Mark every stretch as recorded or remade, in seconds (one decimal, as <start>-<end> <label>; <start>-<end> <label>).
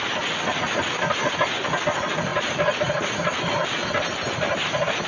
0.0-5.1 recorded